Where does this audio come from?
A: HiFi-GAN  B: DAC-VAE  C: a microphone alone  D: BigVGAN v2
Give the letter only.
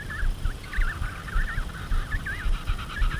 C